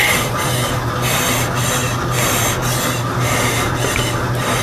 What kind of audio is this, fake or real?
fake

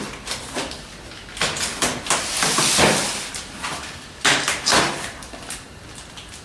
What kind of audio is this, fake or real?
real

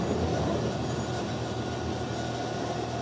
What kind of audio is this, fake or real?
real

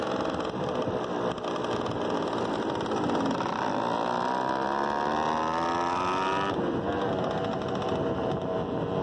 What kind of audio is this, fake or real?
real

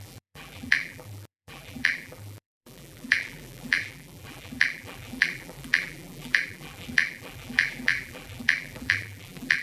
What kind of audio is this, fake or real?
fake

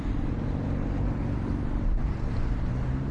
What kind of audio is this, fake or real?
real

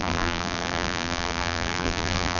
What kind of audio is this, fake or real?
fake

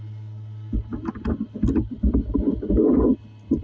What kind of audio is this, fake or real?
real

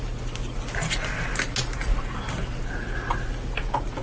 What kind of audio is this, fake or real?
real